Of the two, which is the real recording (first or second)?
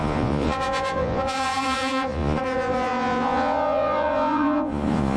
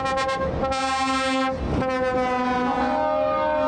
second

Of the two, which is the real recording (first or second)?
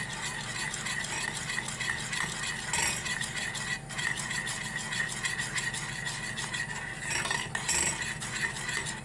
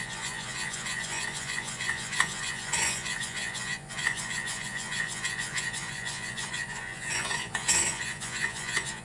first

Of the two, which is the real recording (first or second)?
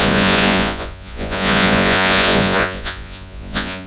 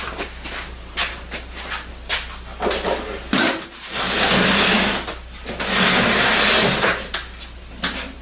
second